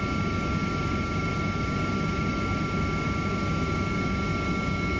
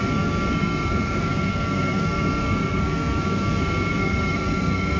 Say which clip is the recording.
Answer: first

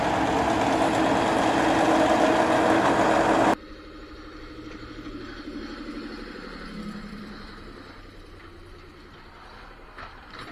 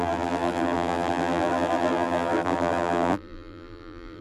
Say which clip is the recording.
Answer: first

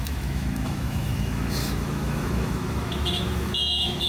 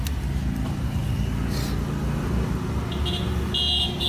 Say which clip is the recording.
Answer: second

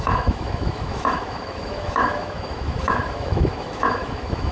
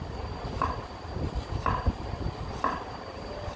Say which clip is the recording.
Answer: second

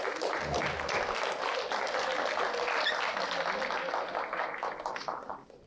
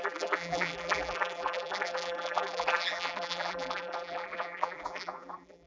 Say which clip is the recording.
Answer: first